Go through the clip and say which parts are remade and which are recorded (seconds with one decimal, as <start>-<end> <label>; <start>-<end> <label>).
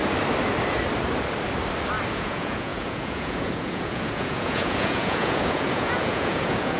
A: 0.0-2.1 recorded; 2.1-6.8 remade